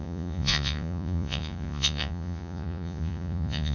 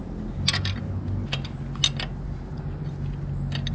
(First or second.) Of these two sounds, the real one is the second